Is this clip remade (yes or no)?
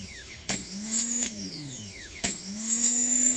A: yes